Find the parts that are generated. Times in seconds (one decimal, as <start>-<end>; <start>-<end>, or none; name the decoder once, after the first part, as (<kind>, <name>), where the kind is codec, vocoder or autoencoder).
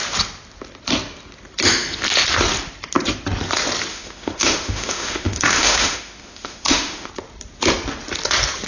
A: 3.9-7.1 (autoencoder, DAC-VAE)